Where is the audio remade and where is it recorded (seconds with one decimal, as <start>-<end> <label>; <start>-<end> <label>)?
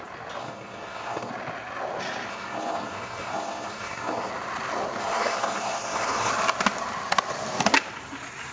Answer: 0.0-0.4 recorded; 0.4-1.3 remade; 1.3-2.3 recorded; 2.3-4.3 remade; 4.3-5.0 recorded; 5.0-6.3 remade; 6.3-8.5 recorded